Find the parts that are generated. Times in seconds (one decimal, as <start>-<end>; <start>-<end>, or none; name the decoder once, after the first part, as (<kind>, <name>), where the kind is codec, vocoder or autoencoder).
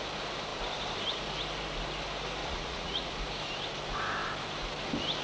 2.4-3.1 (vocoder, Vocos)